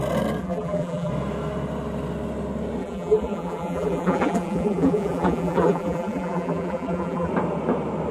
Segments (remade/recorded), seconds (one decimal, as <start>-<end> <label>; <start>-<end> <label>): 0.0-0.4 recorded; 0.4-1.1 remade; 1.1-2.8 recorded; 2.8-7.3 remade; 7.3-8.1 recorded